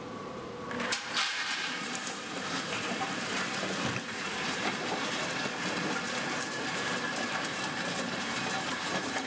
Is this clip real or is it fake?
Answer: fake